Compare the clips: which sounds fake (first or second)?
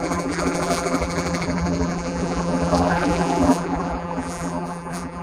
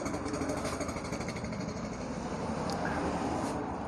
first